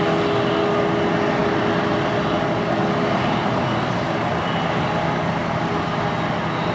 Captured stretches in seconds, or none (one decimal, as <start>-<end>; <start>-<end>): 0.0-6.7

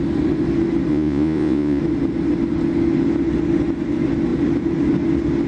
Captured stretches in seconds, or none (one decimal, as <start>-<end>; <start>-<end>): 0.0-0.9; 1.8-5.5

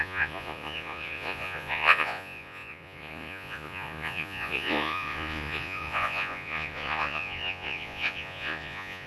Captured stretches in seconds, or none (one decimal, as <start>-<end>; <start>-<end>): none

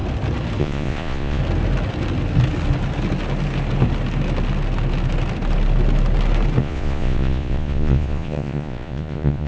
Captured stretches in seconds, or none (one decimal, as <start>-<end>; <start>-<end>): 0.0-0.6; 1.4-6.6

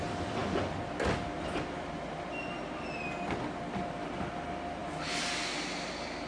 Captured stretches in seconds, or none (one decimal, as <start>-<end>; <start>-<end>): 0.0-6.3

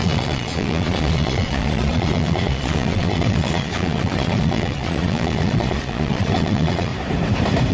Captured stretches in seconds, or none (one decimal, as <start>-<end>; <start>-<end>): 6.9-7.7

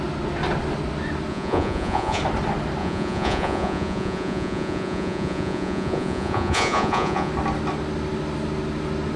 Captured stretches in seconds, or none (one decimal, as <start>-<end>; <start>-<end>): 0.0-1.3; 2.2-2.8; 7.3-9.2

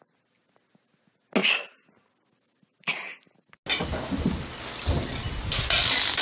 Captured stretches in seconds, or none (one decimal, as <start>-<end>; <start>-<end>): 0.0-6.2